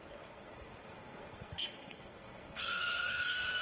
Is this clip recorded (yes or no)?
no